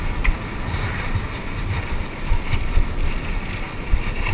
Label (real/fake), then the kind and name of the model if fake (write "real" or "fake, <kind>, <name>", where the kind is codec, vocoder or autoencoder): real